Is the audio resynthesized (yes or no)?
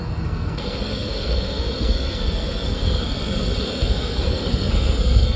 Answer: yes